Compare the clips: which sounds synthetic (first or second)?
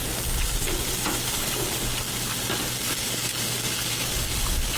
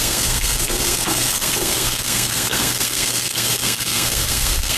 second